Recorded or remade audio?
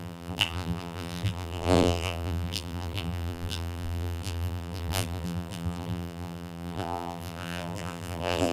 remade